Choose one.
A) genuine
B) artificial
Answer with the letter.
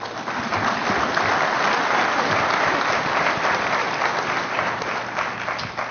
A